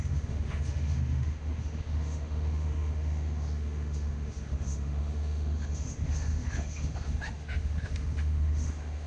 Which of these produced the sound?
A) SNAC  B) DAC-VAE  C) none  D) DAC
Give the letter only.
B